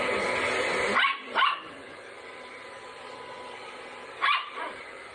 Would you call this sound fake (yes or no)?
yes